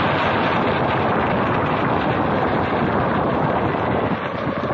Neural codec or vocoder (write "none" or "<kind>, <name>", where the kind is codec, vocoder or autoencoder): none